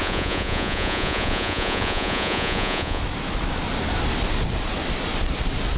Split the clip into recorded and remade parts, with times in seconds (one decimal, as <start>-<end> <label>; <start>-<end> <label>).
0.0-3.0 remade; 3.0-5.8 recorded